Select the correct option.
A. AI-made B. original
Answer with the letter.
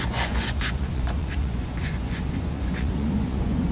A